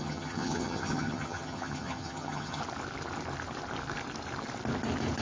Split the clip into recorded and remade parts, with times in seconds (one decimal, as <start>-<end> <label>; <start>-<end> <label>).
0.0-2.6 remade; 2.6-5.2 recorded